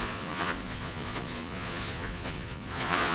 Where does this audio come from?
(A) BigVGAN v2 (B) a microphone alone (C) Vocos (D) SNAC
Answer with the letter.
C